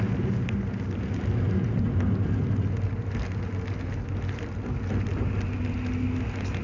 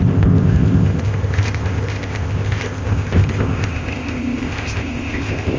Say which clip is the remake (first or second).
second